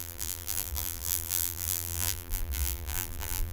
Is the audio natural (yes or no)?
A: no